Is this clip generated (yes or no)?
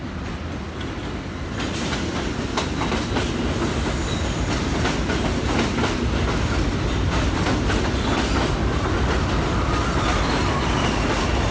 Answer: no